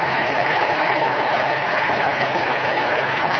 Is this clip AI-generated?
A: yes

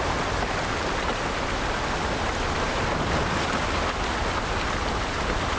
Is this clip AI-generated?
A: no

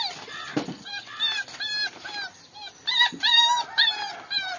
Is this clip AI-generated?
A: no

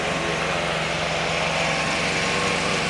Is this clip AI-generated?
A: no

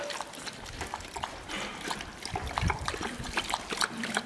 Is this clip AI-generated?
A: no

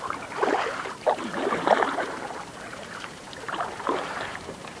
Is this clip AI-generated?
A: yes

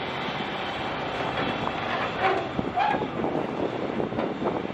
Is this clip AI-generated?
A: no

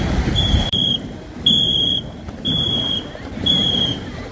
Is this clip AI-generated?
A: yes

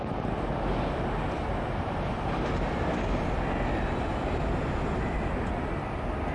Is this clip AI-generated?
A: no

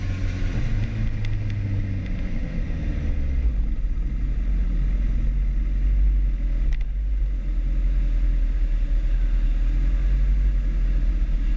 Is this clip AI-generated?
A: no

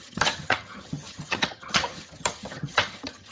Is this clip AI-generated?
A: yes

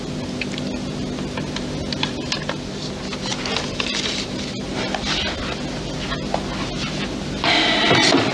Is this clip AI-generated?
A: no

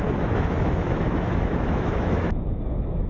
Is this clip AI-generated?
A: yes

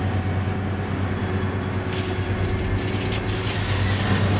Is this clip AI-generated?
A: no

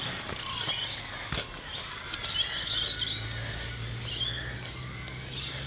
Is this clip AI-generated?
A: no